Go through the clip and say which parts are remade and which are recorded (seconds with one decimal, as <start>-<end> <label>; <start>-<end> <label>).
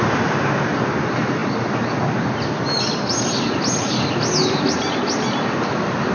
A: 0.0-6.1 recorded